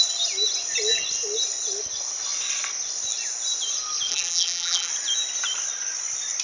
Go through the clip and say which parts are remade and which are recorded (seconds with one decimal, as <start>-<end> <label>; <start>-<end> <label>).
0.0-4.1 recorded; 4.1-4.9 remade; 4.9-6.4 recorded